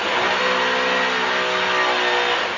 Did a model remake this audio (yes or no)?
no